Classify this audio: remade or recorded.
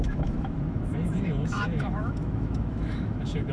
remade